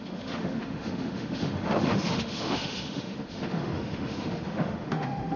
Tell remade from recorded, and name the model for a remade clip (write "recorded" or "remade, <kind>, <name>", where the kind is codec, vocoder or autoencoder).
remade, autoencoder, DAC-VAE